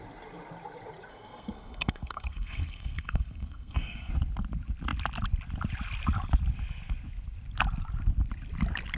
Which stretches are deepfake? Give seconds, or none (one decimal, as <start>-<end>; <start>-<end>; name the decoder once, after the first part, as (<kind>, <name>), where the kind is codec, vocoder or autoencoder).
1.1-4.1 (codec, SNAC)